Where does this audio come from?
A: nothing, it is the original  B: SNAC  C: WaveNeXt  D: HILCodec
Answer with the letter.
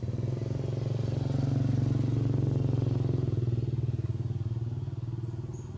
A